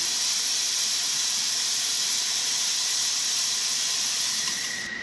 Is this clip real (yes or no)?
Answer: no